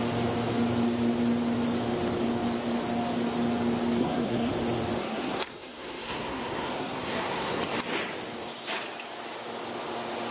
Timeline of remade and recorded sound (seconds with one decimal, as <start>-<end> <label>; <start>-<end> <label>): 0.0-4.0 recorded; 4.0-4.5 remade; 4.5-5.0 recorded; 5.0-7.6 remade; 7.6-10.3 recorded